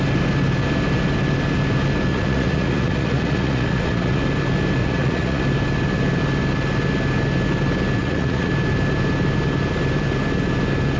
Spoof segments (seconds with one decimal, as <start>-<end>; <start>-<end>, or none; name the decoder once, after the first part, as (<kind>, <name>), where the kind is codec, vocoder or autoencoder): 2.1-4.2 (vocoder, Vocos); 4.8-5.4; 8.0-8.5